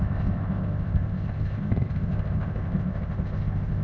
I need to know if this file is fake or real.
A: fake